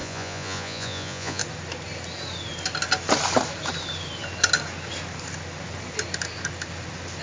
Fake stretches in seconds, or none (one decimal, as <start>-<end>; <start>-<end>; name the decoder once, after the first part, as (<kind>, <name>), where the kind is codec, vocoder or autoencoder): 0.0-1.4 (vocoder, Vocos)